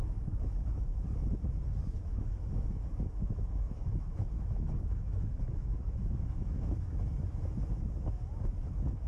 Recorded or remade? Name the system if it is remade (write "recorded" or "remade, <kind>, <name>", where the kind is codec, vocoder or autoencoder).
remade, autoencoder, DAC-VAE